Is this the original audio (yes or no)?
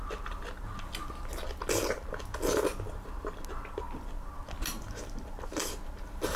yes